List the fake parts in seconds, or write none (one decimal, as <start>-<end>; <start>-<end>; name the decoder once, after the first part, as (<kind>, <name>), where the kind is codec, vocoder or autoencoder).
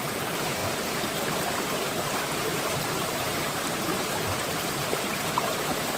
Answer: 0.0-0.6 (vocoder, BigVGAN v2); 1.3-6.0